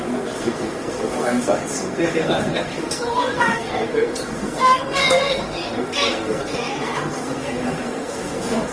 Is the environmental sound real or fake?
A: fake